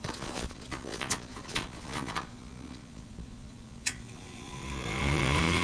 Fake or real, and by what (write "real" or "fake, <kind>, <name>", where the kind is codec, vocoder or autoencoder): fake, vocoder, Vocos